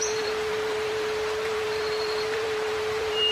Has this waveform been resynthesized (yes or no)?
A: yes